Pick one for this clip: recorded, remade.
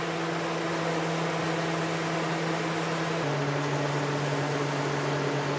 recorded